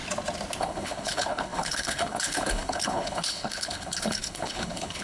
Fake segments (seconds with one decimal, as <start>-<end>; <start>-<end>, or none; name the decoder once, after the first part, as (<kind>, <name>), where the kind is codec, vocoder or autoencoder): 0.6-5.0 (codec, HILCodec)